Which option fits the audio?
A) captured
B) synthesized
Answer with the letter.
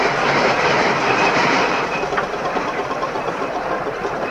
B